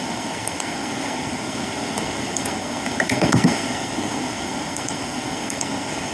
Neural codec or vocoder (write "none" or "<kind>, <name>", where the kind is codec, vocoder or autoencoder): codec, SNAC